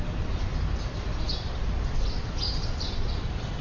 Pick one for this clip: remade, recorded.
recorded